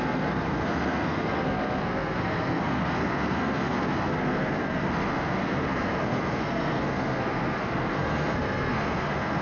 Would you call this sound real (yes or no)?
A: no